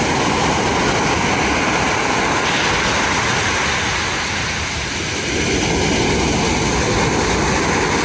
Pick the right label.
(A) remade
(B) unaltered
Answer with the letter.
B